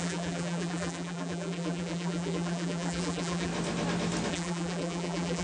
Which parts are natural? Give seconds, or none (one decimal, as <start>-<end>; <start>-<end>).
3.5-4.3